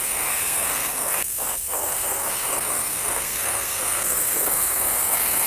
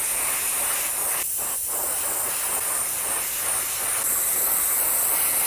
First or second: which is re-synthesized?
first